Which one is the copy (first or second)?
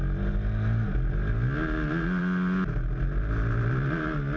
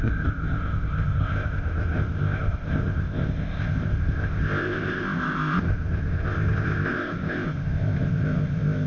second